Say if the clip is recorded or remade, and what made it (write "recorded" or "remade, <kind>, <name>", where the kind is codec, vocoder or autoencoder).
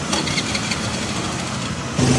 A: recorded